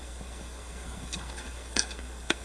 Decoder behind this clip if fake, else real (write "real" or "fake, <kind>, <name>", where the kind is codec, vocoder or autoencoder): fake, codec, SNAC